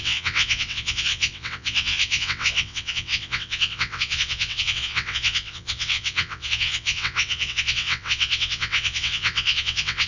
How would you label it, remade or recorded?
remade